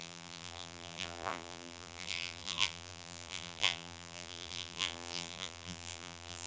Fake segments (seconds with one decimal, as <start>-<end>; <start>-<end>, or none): 0.0-6.5